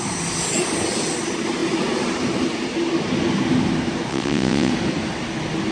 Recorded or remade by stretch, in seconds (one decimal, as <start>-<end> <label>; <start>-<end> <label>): 0.0-4.1 recorded; 4.1-4.7 remade; 4.7-5.7 recorded